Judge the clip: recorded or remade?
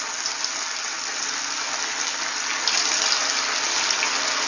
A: recorded